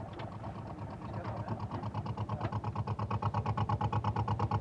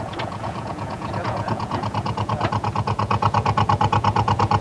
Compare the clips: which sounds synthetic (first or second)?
second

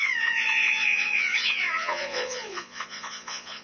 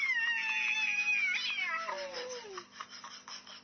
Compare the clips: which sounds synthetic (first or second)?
first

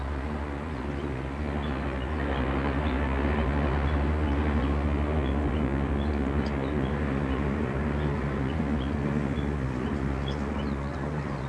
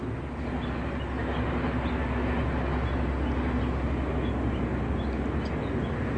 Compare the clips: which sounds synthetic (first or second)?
first